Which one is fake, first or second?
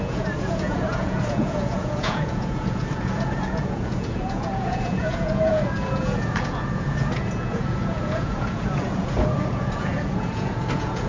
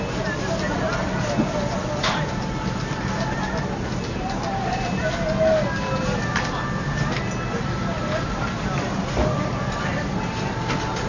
first